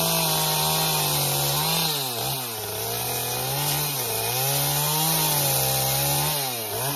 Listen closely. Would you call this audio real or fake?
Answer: real